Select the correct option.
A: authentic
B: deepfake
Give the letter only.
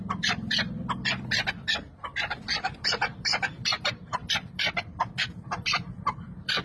B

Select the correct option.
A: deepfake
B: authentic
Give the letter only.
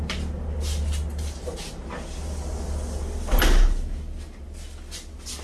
B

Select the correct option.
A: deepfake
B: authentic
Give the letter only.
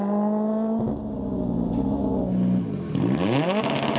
B